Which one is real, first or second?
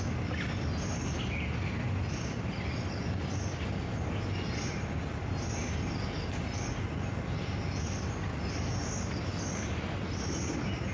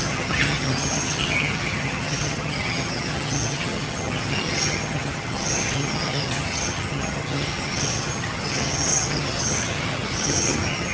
first